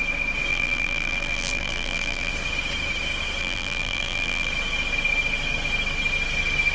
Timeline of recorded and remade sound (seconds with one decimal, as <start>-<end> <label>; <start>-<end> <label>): 0.0-0.5 recorded; 0.5-2.3 remade; 2.3-3.4 recorded; 3.4-4.5 remade; 4.5-6.7 recorded